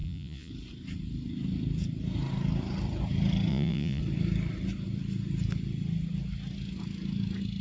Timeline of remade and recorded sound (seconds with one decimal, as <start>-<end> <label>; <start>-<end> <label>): 0.0-0.5 remade; 0.5-3.5 recorded; 3.5-4.0 remade; 4.0-7.6 recorded